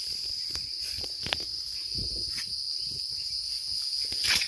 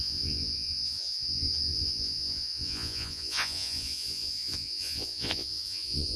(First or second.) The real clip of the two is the first